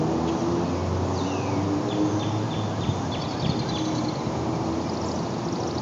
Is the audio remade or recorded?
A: recorded